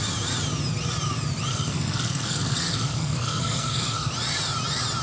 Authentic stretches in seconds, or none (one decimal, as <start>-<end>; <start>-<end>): 0.0-1.5; 4.1-5.0